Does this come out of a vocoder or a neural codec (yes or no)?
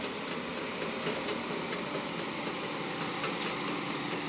no